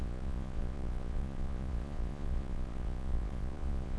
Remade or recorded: remade